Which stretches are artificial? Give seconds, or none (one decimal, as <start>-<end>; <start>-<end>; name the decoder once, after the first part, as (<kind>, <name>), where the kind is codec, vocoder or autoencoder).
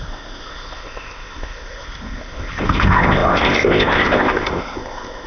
0.0-5.3 (codec, ZipCodec)